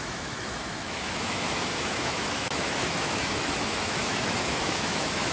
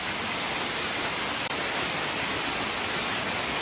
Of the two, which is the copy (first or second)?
first